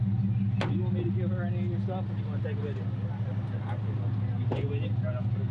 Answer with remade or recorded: recorded